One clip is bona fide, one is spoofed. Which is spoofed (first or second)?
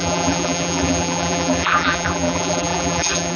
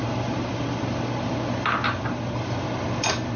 first